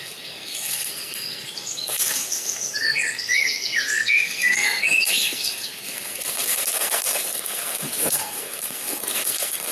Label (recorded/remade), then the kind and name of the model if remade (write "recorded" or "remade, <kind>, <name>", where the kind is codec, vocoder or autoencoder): remade, codec, SNAC